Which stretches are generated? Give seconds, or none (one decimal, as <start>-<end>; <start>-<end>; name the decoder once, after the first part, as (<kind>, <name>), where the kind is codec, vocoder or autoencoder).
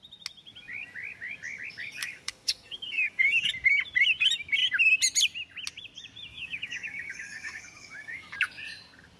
2.0-3.5 (codec, DAC); 6.3-8.3